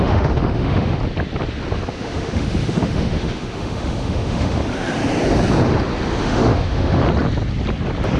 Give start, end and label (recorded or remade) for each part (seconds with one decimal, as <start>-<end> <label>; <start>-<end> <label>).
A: 0.0-1.0 remade; 1.0-1.9 recorded; 1.9-4.6 remade; 4.6-6.2 recorded; 6.2-7.0 remade; 7.0-8.2 recorded